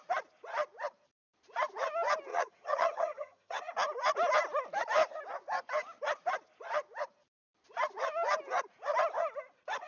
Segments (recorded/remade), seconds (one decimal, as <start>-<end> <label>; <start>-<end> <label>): 0.0-2.3 recorded; 2.3-3.6 remade; 3.6-9.9 recorded